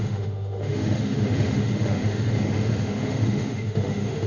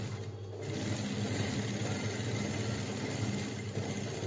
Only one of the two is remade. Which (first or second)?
first